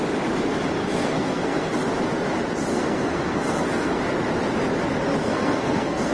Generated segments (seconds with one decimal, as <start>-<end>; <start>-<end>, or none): 0.8-1.7; 2.7-4.0; 5.2-6.1